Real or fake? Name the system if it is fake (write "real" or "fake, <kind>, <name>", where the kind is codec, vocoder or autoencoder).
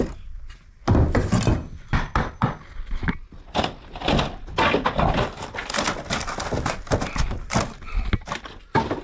real